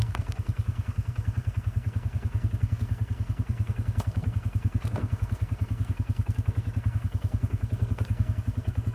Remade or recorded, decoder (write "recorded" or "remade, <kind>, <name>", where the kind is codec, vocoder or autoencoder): remade, codec, SNAC